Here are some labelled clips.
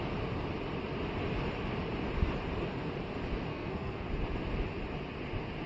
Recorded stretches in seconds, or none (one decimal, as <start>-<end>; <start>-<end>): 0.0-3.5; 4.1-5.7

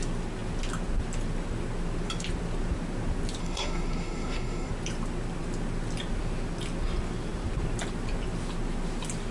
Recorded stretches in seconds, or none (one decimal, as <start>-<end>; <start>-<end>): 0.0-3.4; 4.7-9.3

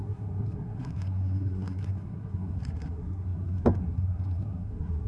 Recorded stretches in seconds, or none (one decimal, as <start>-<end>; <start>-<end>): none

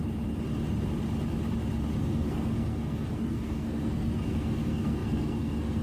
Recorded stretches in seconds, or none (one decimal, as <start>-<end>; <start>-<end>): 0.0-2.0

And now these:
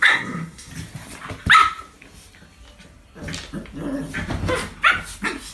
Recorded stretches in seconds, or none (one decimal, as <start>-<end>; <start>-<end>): 0.7-5.5